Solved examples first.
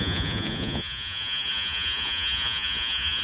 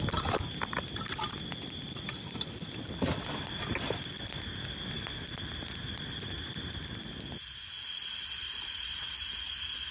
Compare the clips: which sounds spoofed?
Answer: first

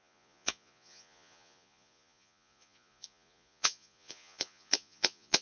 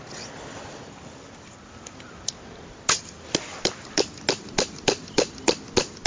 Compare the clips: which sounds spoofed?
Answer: first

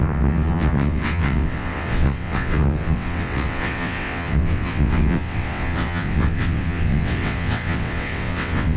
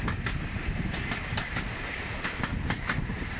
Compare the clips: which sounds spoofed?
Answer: first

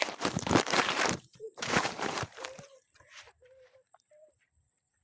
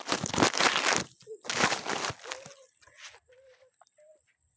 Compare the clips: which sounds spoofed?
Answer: first